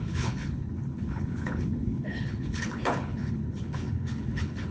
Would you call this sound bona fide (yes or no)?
no